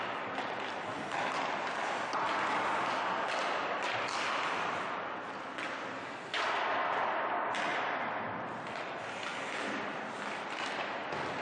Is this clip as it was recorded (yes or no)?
yes